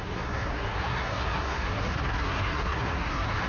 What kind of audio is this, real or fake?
fake